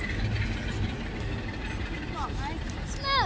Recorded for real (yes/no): yes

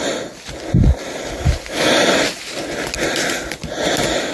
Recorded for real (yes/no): yes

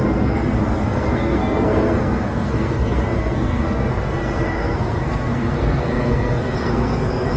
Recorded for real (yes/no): no